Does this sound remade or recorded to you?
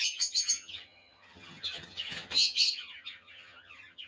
remade